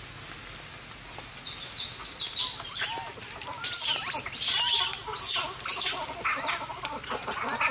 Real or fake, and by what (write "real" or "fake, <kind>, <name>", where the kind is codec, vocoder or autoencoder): real